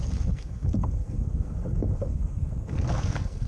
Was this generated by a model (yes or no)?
yes